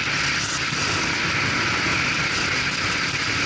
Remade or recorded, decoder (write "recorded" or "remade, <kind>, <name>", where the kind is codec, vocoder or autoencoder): recorded